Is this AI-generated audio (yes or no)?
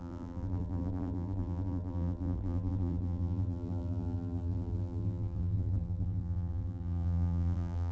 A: yes